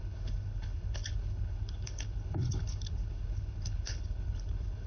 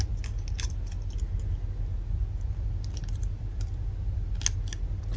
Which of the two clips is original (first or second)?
second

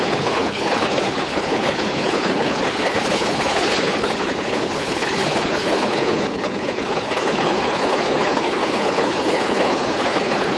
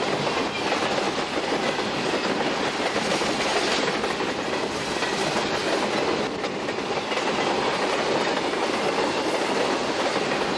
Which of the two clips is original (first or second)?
second